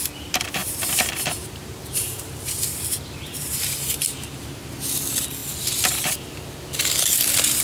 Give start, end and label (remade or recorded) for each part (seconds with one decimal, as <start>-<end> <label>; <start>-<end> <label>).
0.0-0.6 recorded; 0.6-4.7 remade; 4.7-7.6 recorded